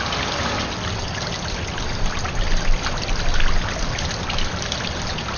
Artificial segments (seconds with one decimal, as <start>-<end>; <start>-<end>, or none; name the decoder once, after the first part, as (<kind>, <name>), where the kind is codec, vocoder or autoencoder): none